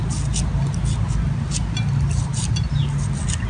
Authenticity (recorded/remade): recorded